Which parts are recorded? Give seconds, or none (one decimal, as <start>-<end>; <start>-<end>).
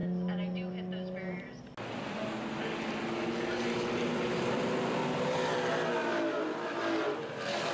0.0-7.7